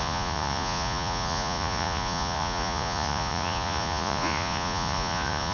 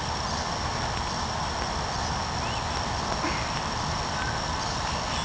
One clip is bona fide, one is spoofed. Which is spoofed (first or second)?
first